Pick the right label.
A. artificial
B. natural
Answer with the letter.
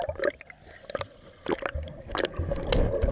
B